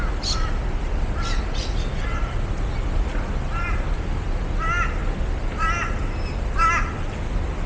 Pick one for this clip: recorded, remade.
recorded